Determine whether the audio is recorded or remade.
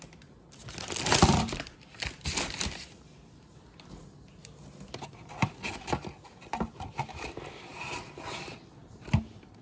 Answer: recorded